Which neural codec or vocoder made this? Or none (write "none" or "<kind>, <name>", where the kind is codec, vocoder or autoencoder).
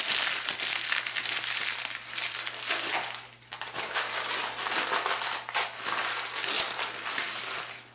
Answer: none